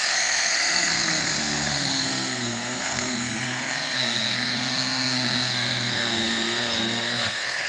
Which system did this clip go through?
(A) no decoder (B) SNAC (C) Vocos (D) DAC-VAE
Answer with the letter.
B